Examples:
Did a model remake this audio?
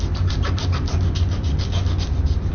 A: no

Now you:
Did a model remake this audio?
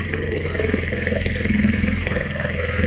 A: yes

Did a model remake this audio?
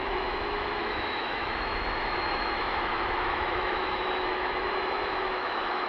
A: yes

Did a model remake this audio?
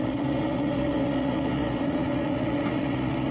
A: yes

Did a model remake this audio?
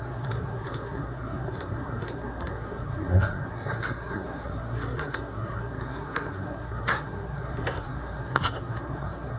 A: yes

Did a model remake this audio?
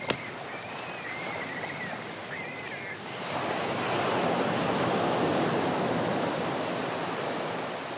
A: no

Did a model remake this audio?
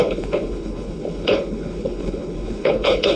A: yes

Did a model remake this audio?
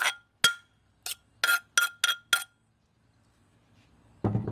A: no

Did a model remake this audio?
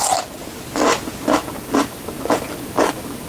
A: no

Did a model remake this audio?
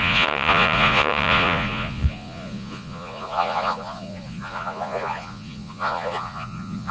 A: yes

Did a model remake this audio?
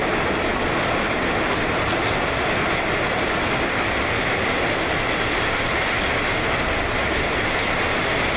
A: no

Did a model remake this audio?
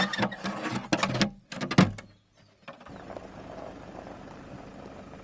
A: no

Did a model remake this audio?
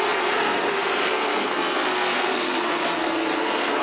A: yes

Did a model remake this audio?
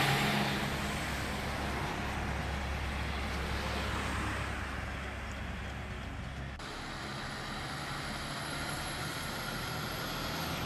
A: no